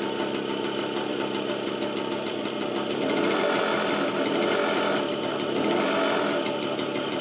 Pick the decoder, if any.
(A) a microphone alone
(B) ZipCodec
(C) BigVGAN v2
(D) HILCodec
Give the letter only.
A